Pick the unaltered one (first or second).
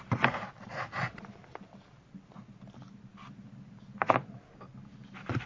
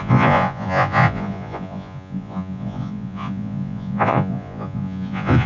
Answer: first